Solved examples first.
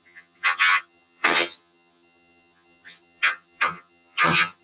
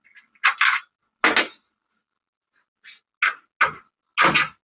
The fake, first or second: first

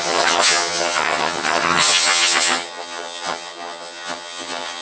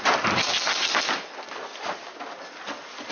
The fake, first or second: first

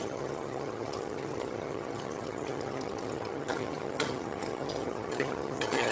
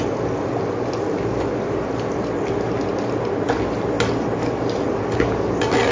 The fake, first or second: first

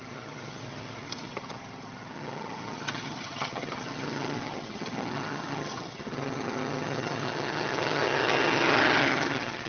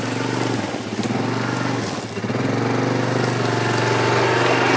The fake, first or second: first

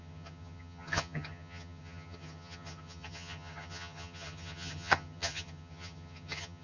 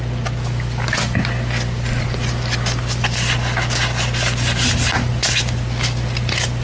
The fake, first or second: first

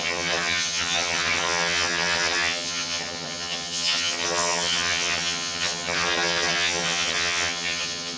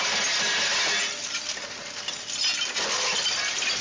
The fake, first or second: first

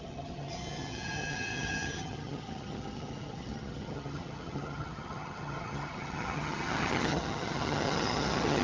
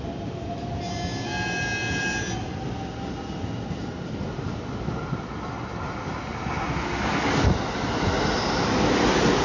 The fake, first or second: first